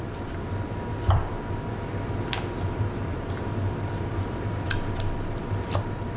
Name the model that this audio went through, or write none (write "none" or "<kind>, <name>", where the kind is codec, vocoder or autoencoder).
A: vocoder, BigVGAN v2